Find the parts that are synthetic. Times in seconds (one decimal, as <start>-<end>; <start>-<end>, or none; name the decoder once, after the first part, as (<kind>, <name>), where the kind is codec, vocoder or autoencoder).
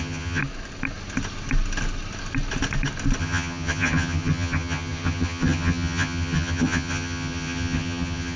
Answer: 0.0-0.4 (vocoder, HiFi-GAN); 3.2-8.4